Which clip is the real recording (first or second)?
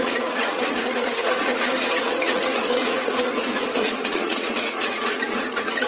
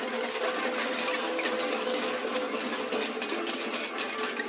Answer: second